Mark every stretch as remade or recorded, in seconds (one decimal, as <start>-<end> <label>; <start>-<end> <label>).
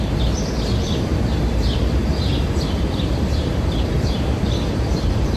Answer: 0.0-5.4 remade